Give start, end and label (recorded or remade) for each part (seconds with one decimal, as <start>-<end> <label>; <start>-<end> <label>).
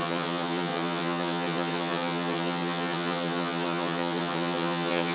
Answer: 0.0-5.1 remade